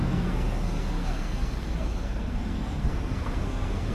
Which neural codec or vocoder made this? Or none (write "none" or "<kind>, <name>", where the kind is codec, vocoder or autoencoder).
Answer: codec, SNAC